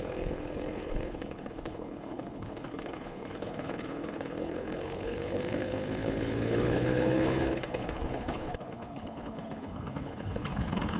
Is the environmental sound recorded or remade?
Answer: remade